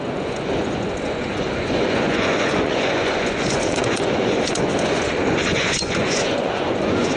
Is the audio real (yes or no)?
no